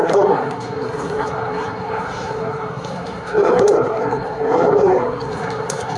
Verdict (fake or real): fake